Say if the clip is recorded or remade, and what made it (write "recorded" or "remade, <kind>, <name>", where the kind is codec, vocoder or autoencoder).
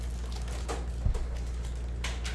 recorded